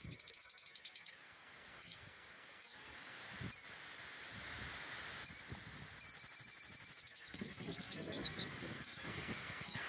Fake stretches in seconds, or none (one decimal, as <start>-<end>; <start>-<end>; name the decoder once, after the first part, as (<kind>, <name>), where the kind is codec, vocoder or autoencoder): 0.0-3.2 (codec, SNAC); 7.0-9.9